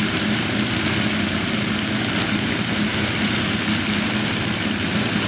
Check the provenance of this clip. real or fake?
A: real